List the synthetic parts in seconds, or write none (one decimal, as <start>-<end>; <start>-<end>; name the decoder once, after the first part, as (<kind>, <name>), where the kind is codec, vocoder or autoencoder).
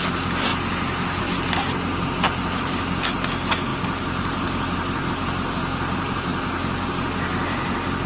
none